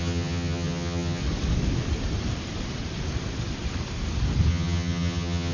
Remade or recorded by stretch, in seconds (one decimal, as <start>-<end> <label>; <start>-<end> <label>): 0.0-1.2 remade; 1.2-4.5 recorded; 4.5-5.5 remade